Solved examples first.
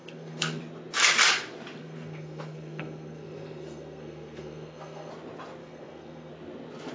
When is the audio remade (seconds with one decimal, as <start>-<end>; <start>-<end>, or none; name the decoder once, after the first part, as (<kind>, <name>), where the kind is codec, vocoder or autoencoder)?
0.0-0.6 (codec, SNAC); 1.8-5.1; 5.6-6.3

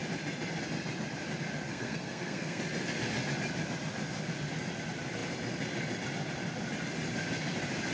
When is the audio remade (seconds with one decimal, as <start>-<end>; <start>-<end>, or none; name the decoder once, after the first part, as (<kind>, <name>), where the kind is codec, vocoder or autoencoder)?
1.7-2.6 (codec, SNAC)

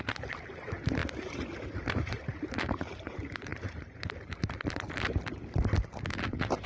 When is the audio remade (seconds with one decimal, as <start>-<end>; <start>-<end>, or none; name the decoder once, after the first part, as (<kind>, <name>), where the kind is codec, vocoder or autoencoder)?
0.0-1.0 (vocoder, BigVGAN v2); 1.6-6.7